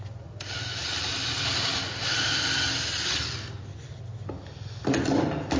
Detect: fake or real real